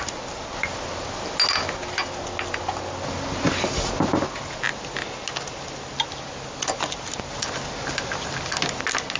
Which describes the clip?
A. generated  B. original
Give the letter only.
B